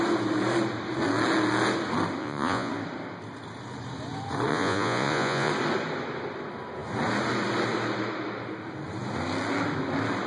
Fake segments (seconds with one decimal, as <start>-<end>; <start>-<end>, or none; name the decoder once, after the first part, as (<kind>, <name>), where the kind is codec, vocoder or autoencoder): 2.2-2.7 (vocoder, Vocos); 4.5-5.5